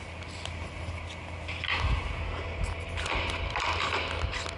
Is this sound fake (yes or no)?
no